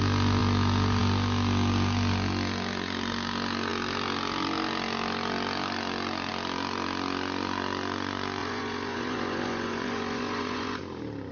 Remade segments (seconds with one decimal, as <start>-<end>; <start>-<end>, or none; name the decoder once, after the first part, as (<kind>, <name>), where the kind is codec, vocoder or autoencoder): 8.4-10.8 (vocoder, Vocos)